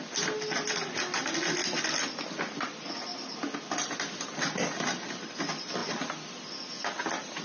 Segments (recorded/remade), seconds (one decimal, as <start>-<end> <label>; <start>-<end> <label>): 0.0-7.4 recorded